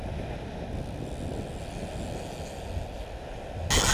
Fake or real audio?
real